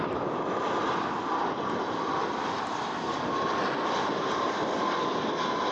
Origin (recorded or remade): recorded